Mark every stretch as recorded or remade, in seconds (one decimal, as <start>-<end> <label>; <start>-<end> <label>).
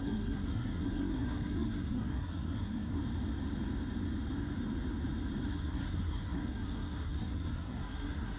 0.0-3.0 remade; 3.0-5.5 recorded; 5.5-8.4 remade